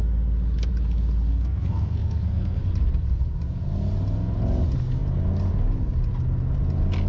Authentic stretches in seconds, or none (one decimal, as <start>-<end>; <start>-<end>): 0.0-1.3; 2.6-7.1

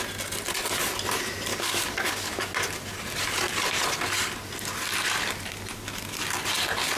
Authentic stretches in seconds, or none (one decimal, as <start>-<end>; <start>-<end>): 0.0-1.5; 2.5-7.0